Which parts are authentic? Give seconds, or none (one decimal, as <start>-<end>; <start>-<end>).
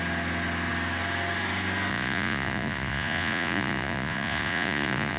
0.0-1.9